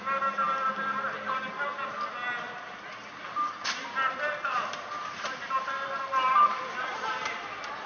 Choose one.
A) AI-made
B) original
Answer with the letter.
B